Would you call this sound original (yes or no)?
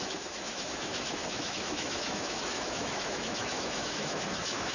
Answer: no